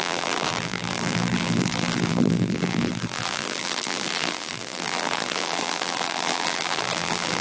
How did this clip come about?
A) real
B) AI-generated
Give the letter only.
B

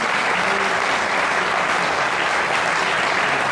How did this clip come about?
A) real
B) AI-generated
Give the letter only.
A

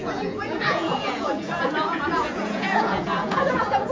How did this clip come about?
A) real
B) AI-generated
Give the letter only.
B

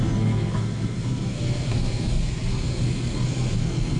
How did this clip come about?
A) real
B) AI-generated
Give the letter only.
B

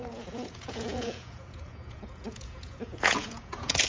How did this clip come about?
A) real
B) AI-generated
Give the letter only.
B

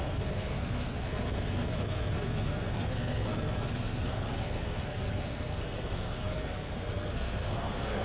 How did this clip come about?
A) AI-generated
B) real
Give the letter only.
A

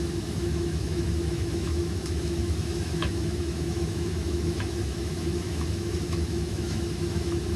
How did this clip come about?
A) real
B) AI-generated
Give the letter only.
B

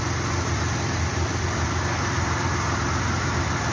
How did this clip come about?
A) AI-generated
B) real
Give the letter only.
B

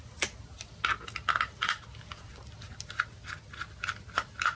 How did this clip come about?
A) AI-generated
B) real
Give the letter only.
B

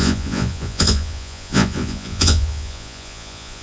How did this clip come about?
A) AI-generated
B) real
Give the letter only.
A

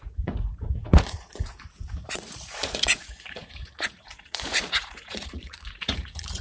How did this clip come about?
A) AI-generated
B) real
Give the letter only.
A